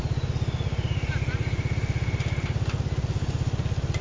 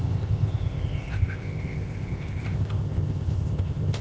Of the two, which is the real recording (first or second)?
first